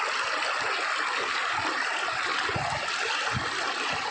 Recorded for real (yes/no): yes